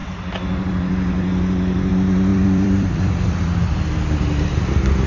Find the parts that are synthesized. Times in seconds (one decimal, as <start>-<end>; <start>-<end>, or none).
2.3-3.6